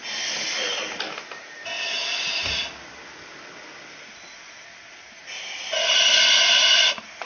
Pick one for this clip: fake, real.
real